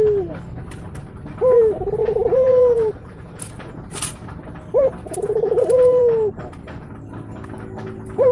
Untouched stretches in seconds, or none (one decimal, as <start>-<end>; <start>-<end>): 0.0-2.0; 3.7-5.0; 6.0-8.3

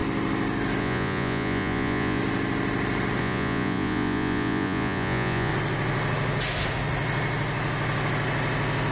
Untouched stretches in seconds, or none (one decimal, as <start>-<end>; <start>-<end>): 0.0-0.8; 2.2-3.2; 5.5-8.9

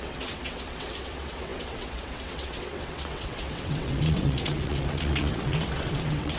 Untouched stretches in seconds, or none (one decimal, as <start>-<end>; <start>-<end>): none

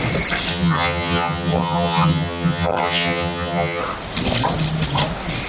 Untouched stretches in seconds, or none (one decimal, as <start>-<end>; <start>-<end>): 0.0-0.5; 3.8-5.5

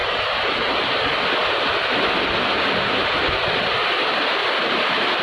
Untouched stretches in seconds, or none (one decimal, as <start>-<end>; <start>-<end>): 0.7-1.4; 3.2-4.4

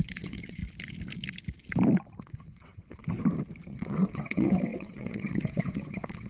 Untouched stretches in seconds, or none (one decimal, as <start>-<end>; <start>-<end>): 0.6-2.3; 3.0-3.6